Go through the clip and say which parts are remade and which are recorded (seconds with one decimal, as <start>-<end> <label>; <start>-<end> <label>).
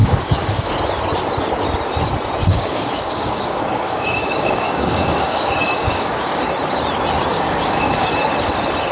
0.0-0.7 remade; 0.7-2.5 recorded; 2.5-6.4 remade; 6.4-7.3 recorded; 7.3-8.1 remade; 8.1-8.9 recorded